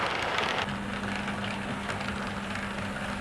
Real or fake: real